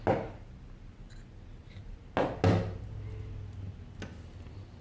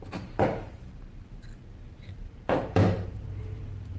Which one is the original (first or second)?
first